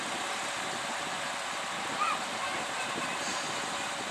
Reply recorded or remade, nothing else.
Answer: recorded